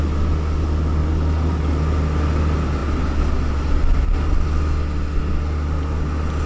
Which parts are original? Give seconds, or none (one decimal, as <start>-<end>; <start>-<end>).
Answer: 0.0-6.5